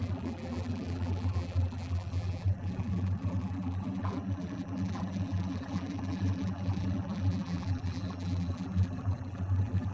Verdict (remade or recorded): remade